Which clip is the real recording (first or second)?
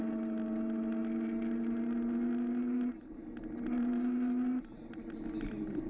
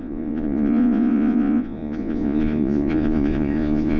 first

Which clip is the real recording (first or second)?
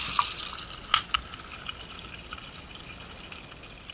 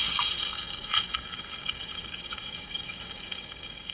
first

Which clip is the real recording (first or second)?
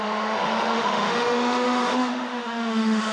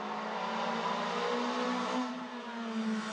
second